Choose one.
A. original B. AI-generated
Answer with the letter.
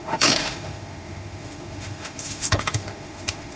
B